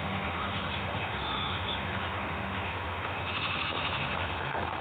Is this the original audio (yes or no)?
no